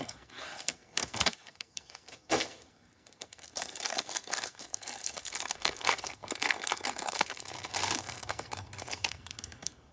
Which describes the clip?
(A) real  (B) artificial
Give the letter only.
B